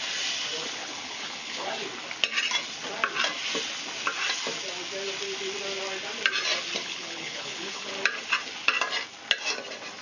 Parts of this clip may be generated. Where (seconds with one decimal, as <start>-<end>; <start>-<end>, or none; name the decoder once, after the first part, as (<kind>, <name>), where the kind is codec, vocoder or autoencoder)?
0.8-1.7 (codec, HILCodec); 6.8-7.9